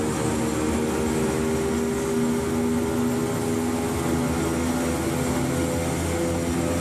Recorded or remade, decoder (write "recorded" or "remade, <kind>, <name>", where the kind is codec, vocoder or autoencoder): recorded